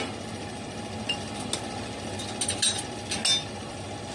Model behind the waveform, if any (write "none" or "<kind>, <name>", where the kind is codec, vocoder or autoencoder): none